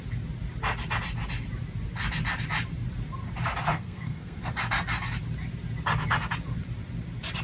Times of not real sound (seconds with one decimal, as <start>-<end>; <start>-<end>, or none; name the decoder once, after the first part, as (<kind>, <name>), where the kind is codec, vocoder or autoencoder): 3.7-4.4 (codec, SNAC)